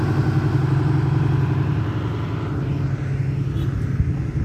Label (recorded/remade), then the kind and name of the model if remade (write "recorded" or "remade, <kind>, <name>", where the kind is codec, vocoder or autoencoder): recorded